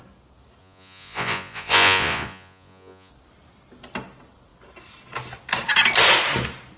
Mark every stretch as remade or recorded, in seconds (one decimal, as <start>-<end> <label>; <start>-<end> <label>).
0.0-0.6 recorded; 0.6-3.1 remade; 3.1-6.8 recorded